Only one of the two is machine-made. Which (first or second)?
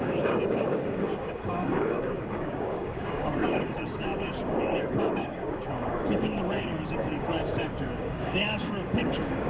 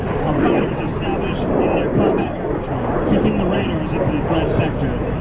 first